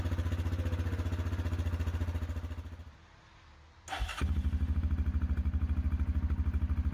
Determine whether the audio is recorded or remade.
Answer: recorded